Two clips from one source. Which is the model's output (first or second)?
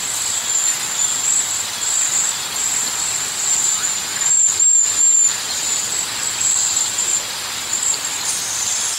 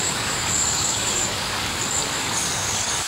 second